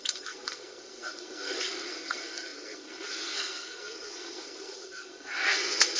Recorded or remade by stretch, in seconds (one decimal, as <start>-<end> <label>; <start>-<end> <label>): 0.0-6.0 remade